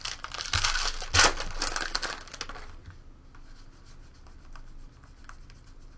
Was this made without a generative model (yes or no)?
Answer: yes